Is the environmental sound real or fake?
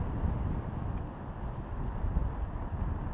real